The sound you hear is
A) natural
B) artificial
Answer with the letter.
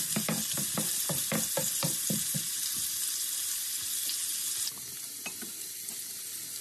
A